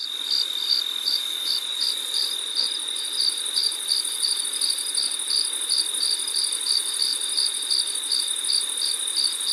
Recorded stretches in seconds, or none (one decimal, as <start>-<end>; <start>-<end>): 3.6-4.1; 7.1-8.9